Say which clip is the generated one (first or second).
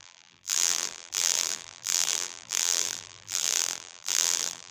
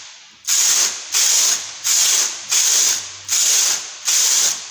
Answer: first